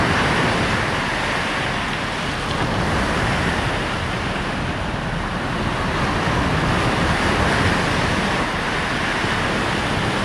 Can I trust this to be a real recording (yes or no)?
yes